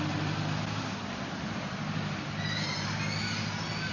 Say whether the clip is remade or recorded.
recorded